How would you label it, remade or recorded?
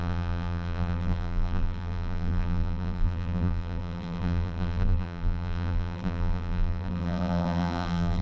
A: remade